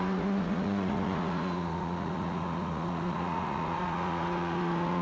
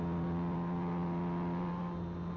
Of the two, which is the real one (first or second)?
second